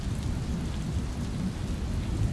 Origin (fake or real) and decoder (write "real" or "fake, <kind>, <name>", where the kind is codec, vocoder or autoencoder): real